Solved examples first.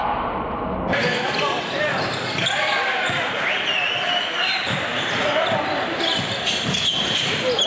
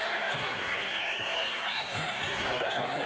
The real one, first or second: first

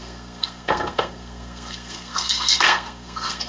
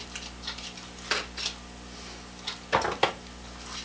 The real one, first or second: second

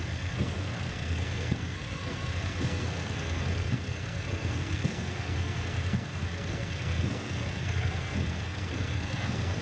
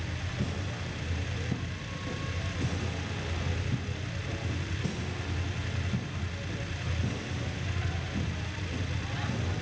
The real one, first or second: second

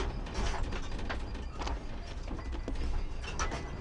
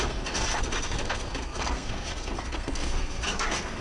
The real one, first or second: first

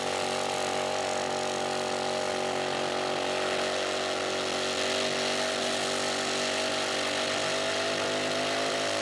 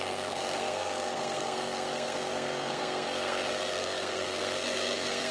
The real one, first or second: first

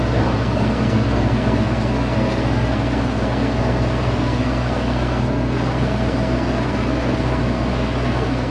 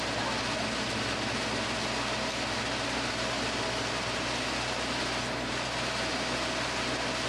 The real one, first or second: second